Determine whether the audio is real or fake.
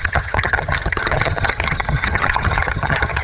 fake